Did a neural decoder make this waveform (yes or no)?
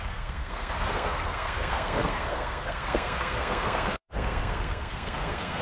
yes